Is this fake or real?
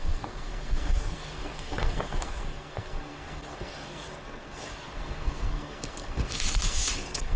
fake